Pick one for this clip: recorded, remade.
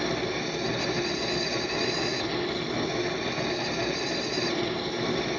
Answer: recorded